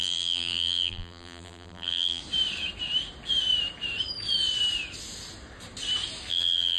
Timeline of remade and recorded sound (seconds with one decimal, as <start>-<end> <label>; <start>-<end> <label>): 0.0-2.2 remade; 2.2-6.3 recorded; 6.3-6.8 remade